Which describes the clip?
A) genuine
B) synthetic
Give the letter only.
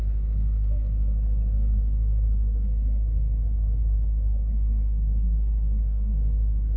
B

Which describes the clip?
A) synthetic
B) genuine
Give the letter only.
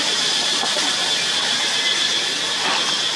B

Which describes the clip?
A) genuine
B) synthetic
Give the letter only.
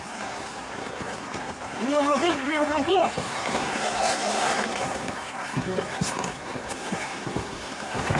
B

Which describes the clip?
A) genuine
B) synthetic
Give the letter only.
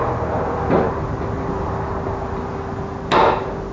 A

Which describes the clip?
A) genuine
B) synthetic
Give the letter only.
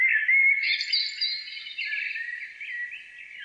A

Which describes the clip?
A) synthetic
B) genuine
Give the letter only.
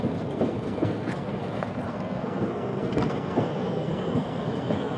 A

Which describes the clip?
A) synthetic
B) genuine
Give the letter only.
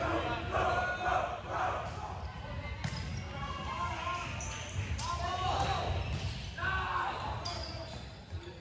B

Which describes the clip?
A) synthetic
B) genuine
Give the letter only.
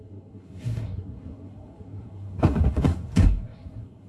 A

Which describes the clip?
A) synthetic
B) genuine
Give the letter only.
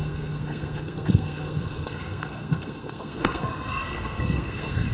A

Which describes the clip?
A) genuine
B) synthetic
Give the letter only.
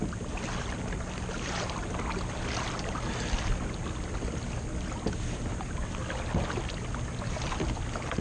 A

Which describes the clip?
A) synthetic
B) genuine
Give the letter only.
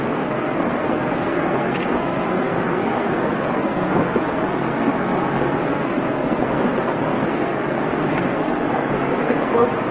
A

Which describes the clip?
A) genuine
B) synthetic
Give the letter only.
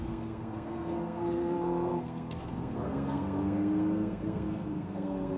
B